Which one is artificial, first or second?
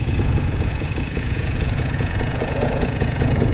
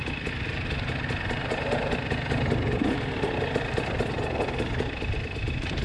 first